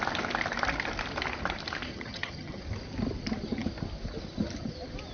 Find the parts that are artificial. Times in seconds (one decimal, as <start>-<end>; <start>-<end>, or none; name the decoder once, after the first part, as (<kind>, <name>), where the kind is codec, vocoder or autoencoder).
1.9-2.6 (vocoder, HiFi-GAN)